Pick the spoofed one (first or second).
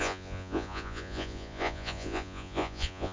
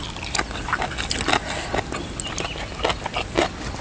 first